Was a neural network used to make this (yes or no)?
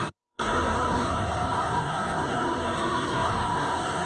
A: yes